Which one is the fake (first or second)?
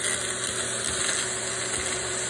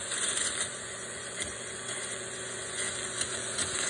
second